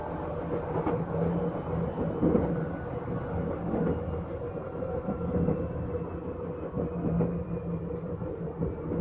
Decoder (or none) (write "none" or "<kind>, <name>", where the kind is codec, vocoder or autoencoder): none